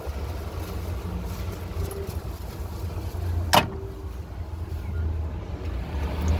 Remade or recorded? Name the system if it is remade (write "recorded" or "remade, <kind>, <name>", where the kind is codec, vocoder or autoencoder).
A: recorded